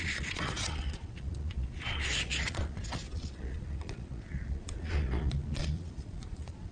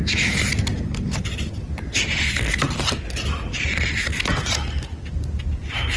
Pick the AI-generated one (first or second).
first